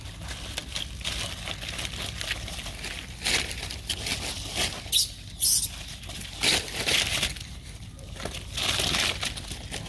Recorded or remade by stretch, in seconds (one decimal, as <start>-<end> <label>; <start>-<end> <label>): 0.0-9.9 recorded